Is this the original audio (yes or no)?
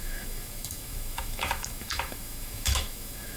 no